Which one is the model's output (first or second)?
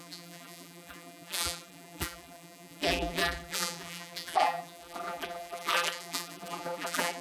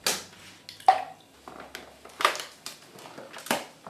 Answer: first